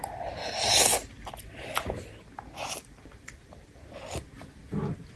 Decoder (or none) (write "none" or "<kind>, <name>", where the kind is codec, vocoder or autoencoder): none